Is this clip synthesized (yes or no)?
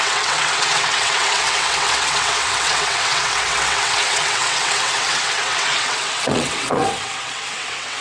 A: yes